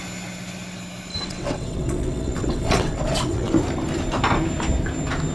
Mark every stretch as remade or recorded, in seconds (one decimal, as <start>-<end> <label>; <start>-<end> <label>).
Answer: 0.0-1.1 recorded; 1.1-3.5 remade; 3.5-5.3 recorded